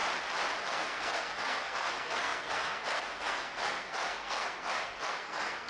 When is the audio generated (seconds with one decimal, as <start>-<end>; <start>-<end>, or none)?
0.6-5.7